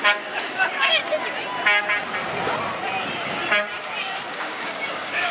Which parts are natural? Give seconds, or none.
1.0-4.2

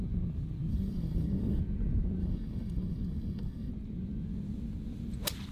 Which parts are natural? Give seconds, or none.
0.0-0.7; 1.6-2.2; 3.7-5.5

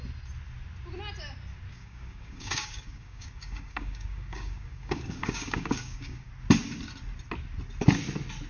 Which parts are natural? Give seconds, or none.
0.0-1.7; 6.3-8.5

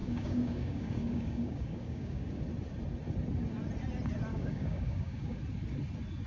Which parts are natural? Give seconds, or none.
2.3-4.3; 5.4-6.3

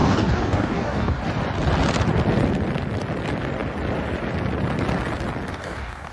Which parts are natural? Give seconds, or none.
1.2-5.5